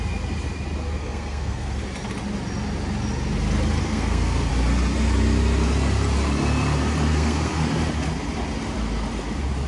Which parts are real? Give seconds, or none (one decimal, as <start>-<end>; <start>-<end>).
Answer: 0.0-1.0; 1.8-3.8; 4.5-7.1; 7.6-9.7